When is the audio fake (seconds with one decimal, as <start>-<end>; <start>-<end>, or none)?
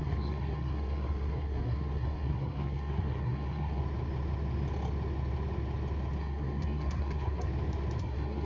0.0-3.8; 6.2-7.5; 8.0-8.5